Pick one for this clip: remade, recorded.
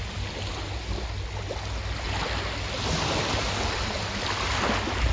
recorded